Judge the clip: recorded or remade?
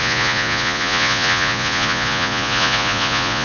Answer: remade